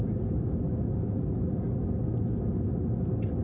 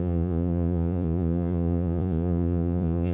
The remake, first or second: second